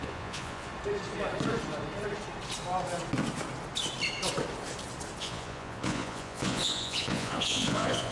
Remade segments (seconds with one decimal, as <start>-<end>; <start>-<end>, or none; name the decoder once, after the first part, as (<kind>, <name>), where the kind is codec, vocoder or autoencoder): 0.0-0.7 (vocoder, Vocos); 5.2-8.1